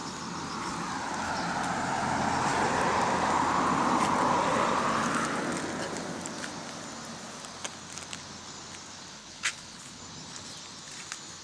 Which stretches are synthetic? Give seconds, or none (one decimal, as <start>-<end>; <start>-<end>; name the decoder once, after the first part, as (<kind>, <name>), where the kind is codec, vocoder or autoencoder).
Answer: 9.2-10.0 (codec, HILCodec)